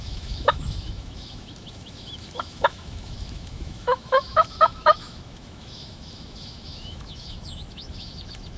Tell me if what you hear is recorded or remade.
remade